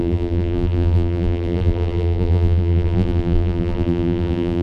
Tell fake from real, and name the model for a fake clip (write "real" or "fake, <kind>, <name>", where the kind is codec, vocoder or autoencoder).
fake, vocoder, BigVGAN v2